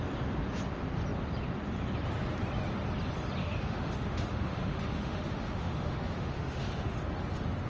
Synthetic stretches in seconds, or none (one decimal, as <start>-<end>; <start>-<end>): 3.4-7.0